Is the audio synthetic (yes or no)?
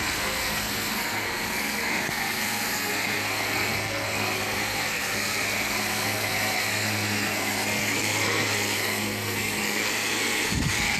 yes